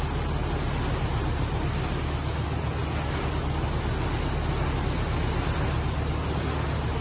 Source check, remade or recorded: recorded